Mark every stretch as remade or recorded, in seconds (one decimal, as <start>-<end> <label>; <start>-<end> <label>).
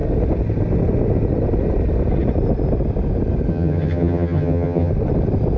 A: 0.0-3.5 recorded; 3.5-4.9 remade; 4.9-5.6 recorded